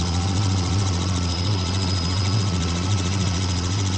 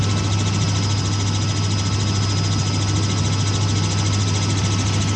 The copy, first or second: first